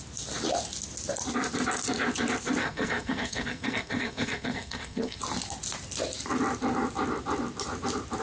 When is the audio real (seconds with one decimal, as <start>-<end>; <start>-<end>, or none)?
0.0-2.6; 5.2-8.2